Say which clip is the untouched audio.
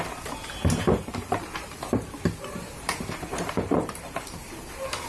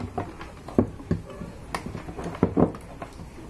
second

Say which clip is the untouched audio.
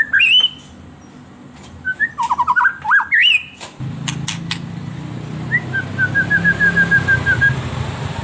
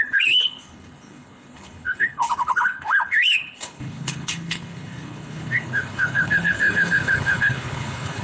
first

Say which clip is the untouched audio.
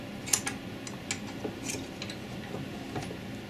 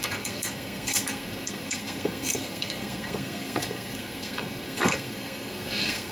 first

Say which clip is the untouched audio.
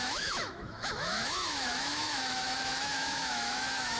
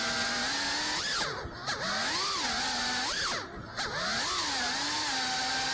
second